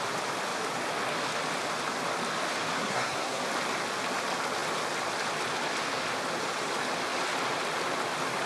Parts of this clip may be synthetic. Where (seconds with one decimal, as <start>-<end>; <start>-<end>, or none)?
2.8-3.4